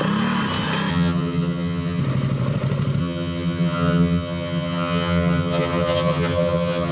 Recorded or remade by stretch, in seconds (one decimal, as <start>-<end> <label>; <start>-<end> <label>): 0.0-0.9 recorded; 0.9-2.0 remade; 2.0-3.0 recorded; 3.0-6.9 remade